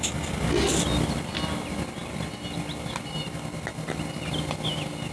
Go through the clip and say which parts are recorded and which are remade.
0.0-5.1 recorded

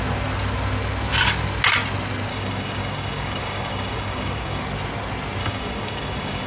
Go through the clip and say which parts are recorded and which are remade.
0.0-2.3 recorded; 2.3-4.6 remade; 4.6-5.4 recorded; 5.4-6.5 remade

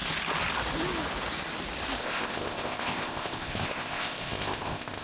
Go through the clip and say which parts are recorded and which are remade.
0.0-2.0 recorded; 2.0-5.0 remade